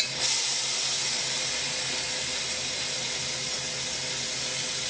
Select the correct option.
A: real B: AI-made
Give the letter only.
A